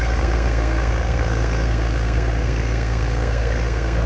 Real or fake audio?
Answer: fake